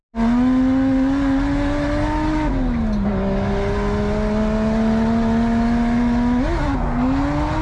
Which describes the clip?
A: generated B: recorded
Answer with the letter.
B